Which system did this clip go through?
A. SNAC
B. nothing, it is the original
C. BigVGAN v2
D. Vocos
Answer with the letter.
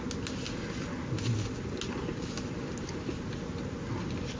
B